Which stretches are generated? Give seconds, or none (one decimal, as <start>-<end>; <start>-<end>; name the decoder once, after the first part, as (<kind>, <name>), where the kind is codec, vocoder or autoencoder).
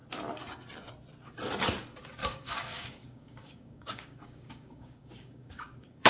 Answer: 2.2-6.1 (codec, DAC)